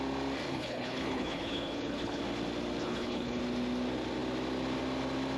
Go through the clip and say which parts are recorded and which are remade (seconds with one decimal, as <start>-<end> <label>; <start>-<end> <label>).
0.0-0.5 recorded; 0.5-2.2 remade; 2.2-2.8 recorded; 2.8-3.4 remade; 3.4-5.4 recorded